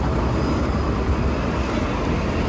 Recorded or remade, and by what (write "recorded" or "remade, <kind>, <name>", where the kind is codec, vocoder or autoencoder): recorded